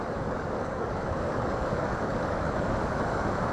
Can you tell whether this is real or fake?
fake